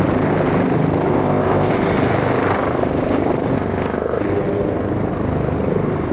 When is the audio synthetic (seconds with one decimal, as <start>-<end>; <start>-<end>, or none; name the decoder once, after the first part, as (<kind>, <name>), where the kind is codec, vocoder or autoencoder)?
1.1-1.7 (codec, ZipCodec); 3.5-4.2